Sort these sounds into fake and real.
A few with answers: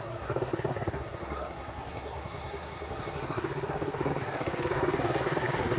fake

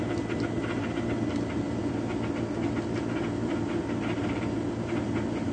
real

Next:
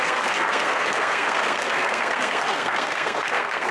fake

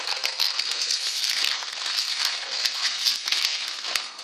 fake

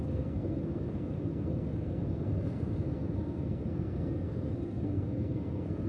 fake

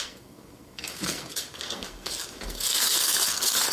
fake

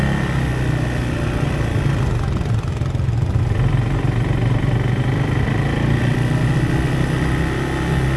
real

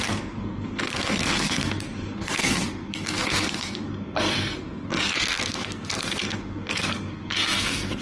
fake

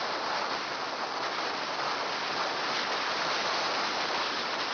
real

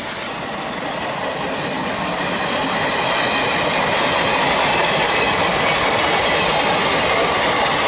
real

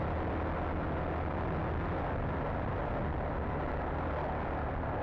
real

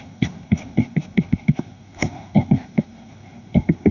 fake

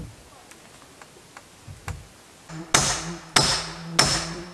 real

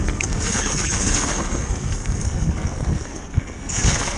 fake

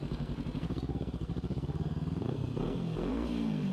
fake